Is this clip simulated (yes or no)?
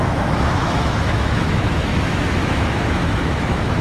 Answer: yes